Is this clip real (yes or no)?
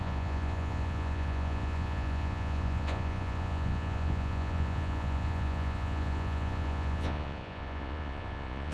no